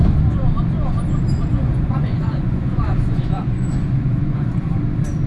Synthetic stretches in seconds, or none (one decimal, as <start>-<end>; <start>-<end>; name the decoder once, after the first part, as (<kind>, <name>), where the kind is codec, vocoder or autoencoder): 1.5-4.7 (vocoder, Vocos)